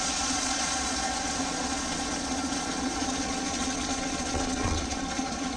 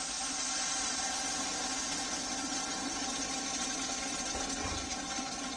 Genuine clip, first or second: second